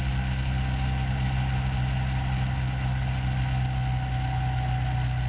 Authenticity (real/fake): real